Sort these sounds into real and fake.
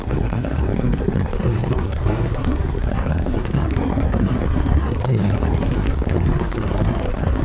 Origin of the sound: fake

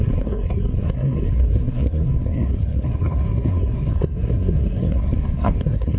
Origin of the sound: fake